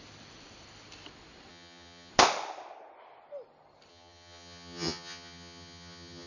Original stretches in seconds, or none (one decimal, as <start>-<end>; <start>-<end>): 0.0-1.5; 2.1-3.9